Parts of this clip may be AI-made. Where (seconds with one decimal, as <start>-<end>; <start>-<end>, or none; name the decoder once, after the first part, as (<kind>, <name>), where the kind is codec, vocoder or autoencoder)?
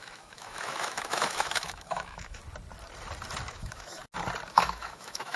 0.0-2.4 (autoencoder, DAC-VAE); 3.5-4.0; 4.5-5.4